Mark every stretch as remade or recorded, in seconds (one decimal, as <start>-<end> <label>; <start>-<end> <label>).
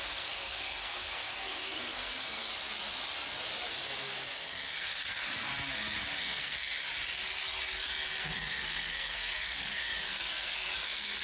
0.0-2.5 remade; 2.5-3.7 recorded; 3.7-5.5 remade; 5.5-6.2 recorded; 6.2-6.8 remade; 6.8-8.2 recorded; 8.2-11.2 remade